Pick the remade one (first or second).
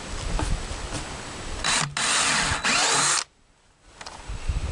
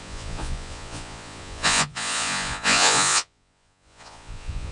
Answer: second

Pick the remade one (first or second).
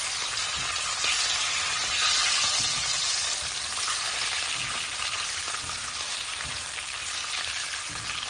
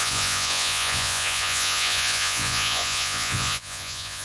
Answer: second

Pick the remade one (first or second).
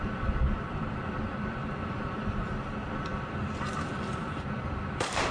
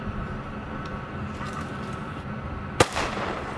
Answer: first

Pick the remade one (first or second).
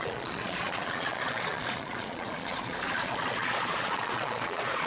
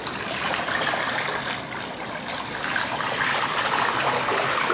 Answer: first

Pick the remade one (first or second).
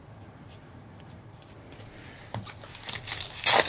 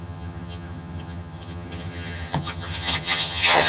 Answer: second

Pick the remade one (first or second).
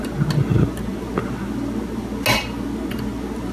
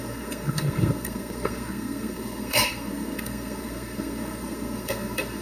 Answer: second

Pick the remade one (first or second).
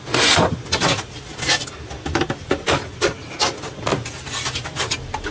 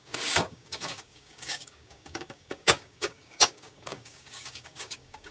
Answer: second